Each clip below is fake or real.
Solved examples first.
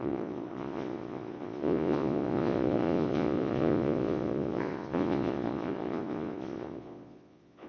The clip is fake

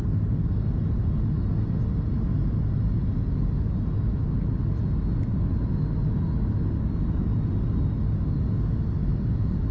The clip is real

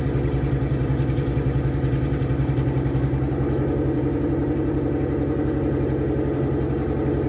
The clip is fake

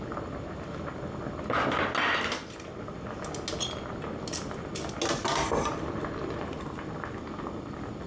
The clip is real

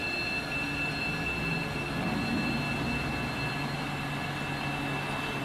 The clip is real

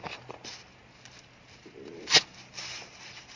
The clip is real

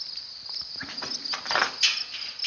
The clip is real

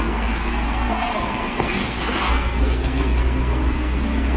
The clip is fake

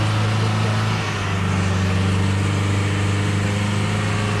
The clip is real